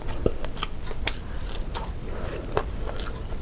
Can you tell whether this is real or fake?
real